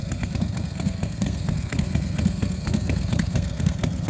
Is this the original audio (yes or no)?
no